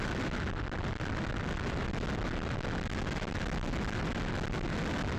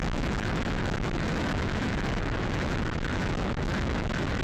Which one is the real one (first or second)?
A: first